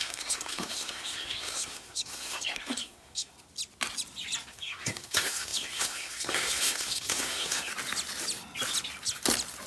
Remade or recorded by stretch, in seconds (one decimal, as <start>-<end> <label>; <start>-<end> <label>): 0.0-3.3 remade; 3.3-4.5 recorded; 4.5-7.7 remade; 7.7-9.7 recorded